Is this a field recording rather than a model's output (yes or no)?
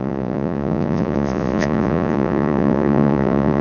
no